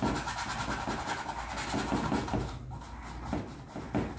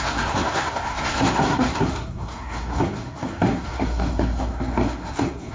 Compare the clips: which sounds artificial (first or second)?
second